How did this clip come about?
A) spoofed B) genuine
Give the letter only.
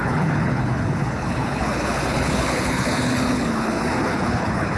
A